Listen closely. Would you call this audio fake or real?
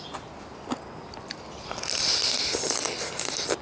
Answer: real